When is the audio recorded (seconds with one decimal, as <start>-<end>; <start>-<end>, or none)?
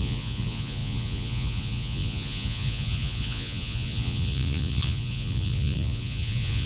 none